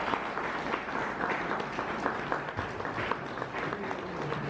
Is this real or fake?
real